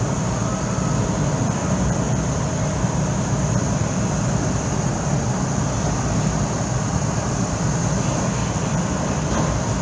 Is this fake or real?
fake